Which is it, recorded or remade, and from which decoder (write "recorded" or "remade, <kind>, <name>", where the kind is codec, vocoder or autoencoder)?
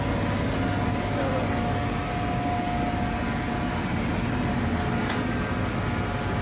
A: recorded